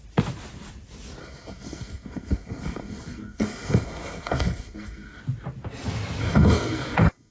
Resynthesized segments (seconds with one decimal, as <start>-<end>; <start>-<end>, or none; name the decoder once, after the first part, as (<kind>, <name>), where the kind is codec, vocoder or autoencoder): 1.2-5.2 (codec, SNAC); 6.2-7.3